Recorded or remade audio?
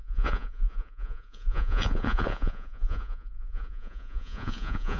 remade